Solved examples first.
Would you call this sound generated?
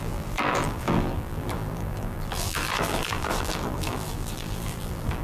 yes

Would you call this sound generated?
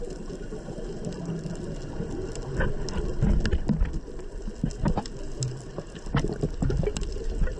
no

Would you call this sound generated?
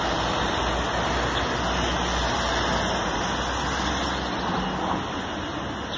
no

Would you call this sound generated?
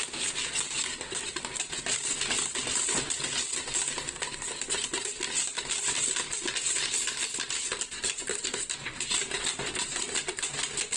no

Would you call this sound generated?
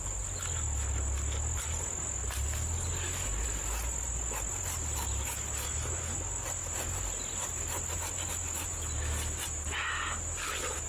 no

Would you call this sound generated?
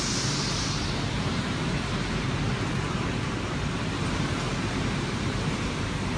yes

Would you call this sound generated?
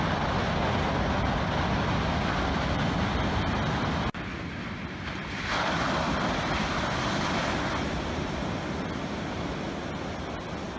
no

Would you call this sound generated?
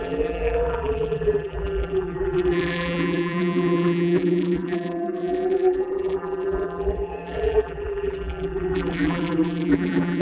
yes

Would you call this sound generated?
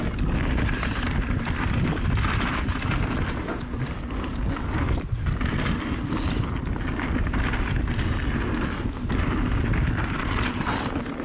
no